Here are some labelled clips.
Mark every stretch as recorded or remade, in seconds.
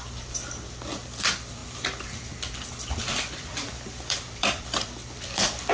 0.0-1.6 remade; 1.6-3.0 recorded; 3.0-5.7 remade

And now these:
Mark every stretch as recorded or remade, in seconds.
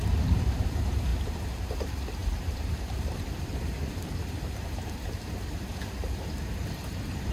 0.0-7.3 remade